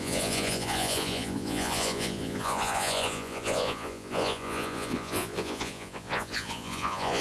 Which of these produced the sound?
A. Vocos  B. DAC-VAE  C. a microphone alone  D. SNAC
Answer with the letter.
A